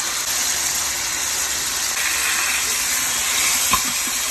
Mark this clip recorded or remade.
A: recorded